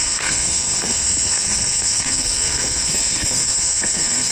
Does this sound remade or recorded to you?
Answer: remade